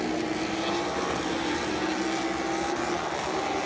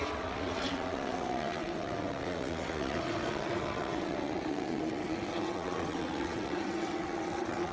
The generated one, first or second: second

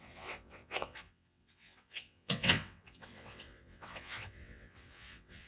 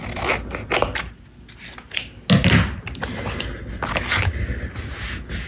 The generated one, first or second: first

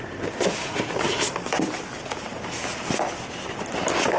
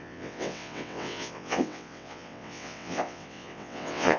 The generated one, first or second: second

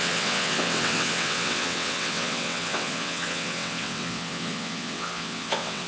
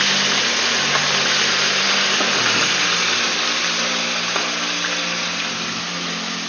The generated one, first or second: first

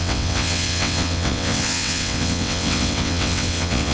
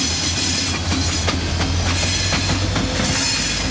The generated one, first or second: first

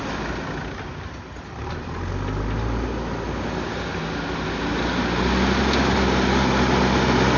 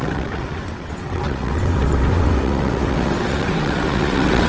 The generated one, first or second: second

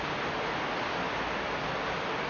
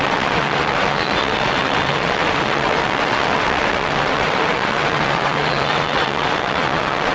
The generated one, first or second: second